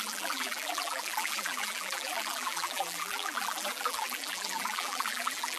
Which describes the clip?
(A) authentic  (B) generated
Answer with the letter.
B